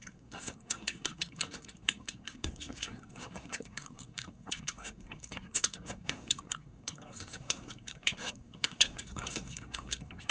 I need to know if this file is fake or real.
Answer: fake